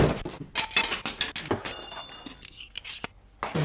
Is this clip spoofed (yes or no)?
no